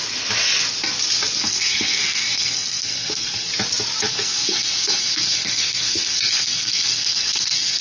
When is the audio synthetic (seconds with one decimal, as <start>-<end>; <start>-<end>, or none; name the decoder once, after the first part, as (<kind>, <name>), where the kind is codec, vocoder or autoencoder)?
1.4-3.5 (codec, SNAC); 4.1-7.8